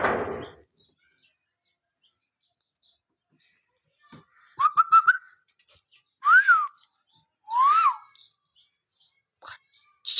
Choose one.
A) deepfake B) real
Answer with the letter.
B